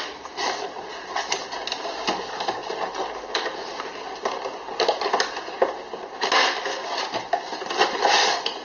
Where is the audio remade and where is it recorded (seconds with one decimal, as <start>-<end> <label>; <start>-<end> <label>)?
0.0-8.6 recorded